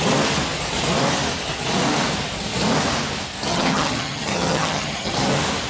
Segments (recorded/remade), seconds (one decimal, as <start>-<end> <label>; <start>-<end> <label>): 0.0-3.5 recorded; 3.5-5.1 remade; 5.1-5.7 recorded